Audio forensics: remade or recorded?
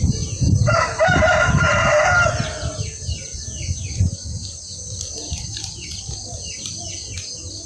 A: recorded